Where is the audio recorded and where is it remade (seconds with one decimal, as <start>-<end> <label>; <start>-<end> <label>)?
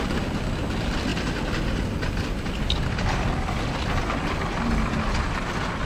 0.0-5.8 recorded